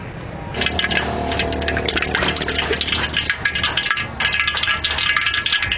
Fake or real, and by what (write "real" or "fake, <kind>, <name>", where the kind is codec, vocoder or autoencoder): real